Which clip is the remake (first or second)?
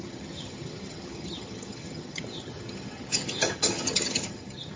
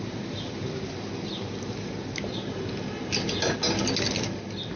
first